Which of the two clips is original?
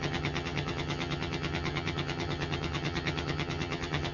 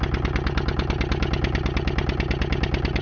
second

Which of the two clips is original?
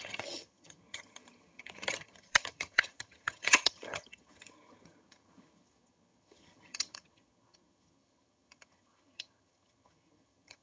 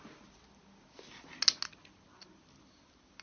second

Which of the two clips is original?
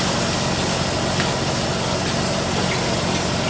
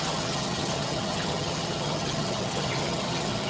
first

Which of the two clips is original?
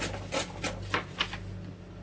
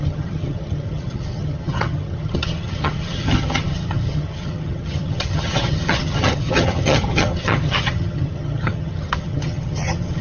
first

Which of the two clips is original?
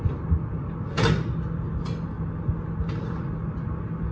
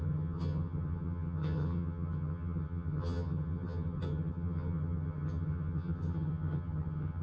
first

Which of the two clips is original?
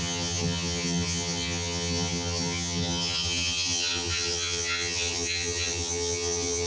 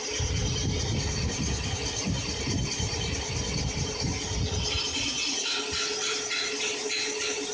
second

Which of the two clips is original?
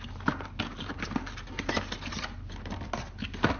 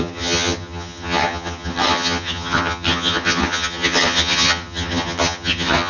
first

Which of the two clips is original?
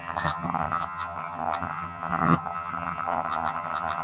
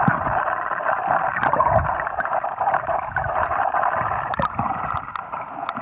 second